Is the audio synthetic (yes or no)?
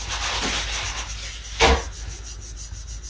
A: no